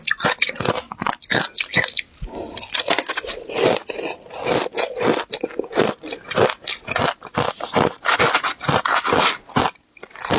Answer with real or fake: real